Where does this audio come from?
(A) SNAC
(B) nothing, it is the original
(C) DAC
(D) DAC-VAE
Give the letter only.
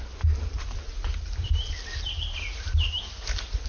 B